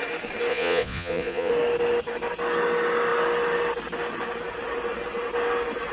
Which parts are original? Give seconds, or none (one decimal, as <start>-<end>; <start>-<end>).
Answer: 0.0-0.5; 1.5-5.9